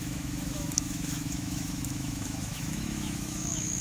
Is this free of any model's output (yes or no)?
no